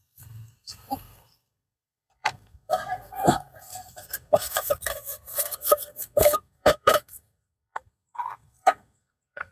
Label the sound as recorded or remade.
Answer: remade